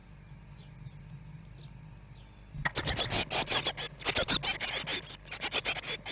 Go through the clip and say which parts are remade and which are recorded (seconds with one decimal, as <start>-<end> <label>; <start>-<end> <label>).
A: 0.0-6.1 recorded